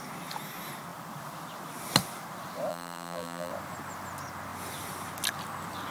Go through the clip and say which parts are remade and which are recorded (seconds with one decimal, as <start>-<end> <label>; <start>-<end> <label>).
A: 0.0-2.7 recorded; 2.7-3.5 remade; 3.5-5.9 recorded